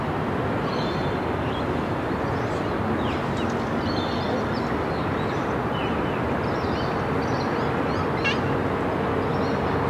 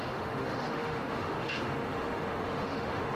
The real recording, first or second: first